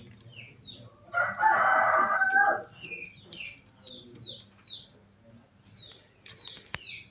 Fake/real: real